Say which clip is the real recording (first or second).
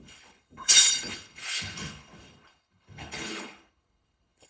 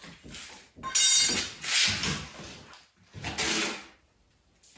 second